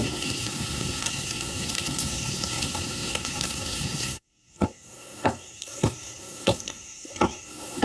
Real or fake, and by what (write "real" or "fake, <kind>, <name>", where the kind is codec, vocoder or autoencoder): fake, codec, SNAC